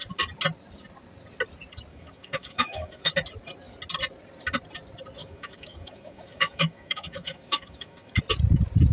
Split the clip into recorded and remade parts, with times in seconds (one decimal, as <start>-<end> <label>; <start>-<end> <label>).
0.0-1.9 recorded; 1.9-3.1 remade; 3.1-5.2 recorded; 5.2-8.2 remade; 8.2-8.9 recorded